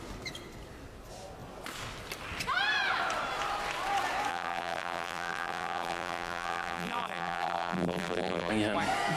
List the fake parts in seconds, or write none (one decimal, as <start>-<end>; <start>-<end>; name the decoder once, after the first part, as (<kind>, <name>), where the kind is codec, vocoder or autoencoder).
4.3-8.5 (vocoder, BigVGAN v2)